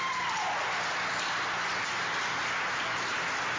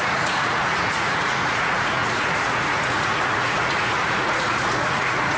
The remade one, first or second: second